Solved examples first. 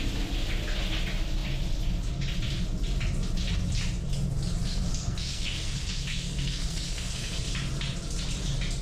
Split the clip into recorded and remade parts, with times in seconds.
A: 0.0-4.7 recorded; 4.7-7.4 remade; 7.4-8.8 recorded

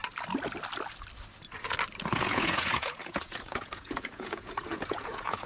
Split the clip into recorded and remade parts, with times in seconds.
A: 0.0-2.1 recorded; 2.1-5.5 remade

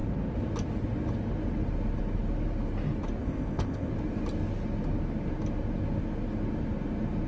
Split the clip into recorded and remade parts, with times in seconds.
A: 0.0-3.2 recorded; 3.2-3.9 remade; 3.9-7.3 recorded